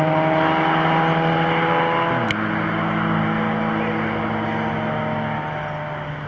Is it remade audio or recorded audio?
recorded